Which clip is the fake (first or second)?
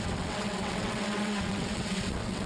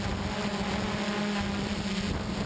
first